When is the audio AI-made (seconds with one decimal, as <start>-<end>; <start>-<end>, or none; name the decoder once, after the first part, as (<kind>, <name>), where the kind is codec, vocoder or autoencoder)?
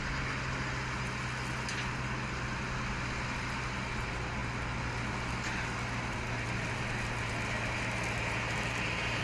none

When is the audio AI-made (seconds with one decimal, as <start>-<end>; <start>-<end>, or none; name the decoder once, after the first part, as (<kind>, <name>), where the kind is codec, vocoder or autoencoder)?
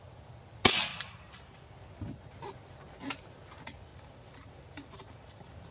0.9-1.7 (vocoder, BigVGAN v2); 3.9-5.7